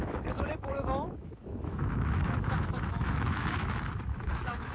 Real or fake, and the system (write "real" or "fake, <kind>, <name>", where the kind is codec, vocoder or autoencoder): fake, autoencoder, DAC-VAE